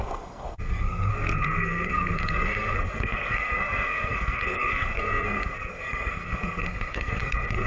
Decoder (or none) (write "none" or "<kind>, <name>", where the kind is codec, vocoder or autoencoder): codec, SNAC